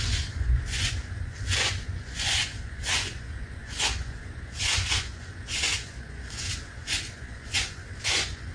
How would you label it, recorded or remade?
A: remade